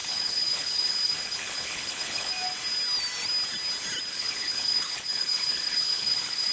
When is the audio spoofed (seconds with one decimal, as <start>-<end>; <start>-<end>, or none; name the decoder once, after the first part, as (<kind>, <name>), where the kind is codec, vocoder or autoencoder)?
0.0-2.3 (codec, HILCodec); 4.1-6.5